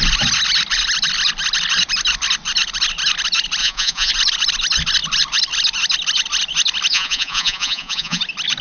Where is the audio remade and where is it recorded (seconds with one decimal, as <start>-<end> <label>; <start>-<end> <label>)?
0.0-3.6 recorded; 3.6-4.1 remade; 4.1-6.9 recorded; 6.9-8.2 remade; 8.2-8.6 recorded